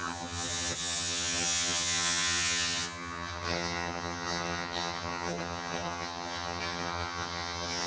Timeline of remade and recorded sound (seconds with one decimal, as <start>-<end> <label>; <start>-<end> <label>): 0.0-7.9 remade